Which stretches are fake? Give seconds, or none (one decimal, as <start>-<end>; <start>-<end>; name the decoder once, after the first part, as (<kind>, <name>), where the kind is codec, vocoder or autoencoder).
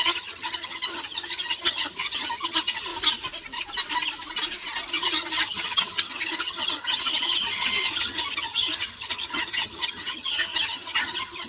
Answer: 0.0-2.9 (vocoder, HiFi-GAN); 4.9-11.5